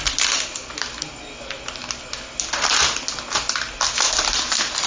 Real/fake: real